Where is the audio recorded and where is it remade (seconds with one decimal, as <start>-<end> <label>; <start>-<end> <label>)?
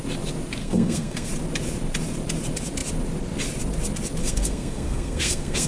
0.0-0.6 recorded; 0.6-1.3 remade; 1.3-4.2 recorded; 4.2-5.7 remade